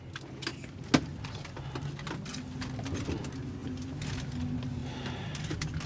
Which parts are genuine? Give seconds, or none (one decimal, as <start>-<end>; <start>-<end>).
0.0-5.9